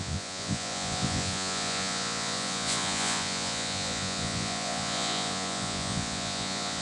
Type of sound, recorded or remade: remade